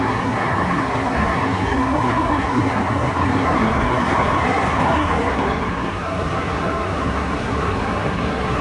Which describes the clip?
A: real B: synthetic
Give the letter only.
B